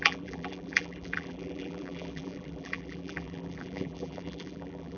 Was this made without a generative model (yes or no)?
no